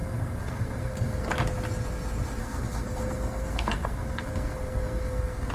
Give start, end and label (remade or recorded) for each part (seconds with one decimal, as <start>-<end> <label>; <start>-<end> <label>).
0.0-1.3 remade; 1.3-2.4 recorded; 2.4-5.5 remade